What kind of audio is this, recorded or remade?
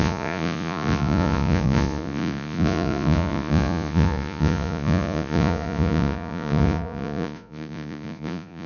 remade